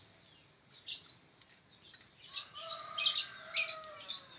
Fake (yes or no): no